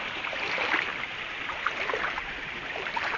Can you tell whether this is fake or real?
fake